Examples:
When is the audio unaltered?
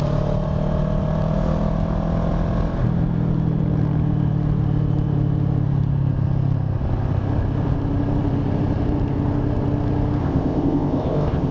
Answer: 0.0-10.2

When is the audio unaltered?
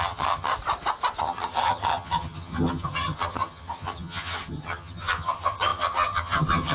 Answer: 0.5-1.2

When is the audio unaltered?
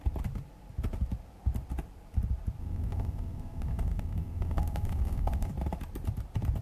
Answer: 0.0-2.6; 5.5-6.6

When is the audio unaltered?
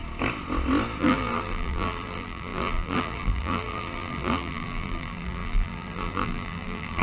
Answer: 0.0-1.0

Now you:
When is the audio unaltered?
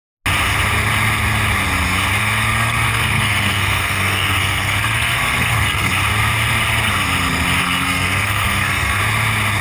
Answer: 0.0-2.2; 5.9-7.6; 9.0-9.6